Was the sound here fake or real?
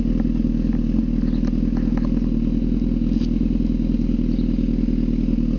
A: real